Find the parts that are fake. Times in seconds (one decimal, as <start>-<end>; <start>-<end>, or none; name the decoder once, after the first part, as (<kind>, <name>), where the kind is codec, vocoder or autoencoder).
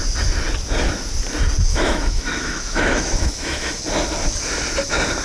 1.7-3.8 (autoencoder, DAC-VAE)